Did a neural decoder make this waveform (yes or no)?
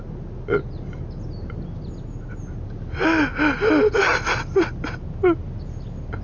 no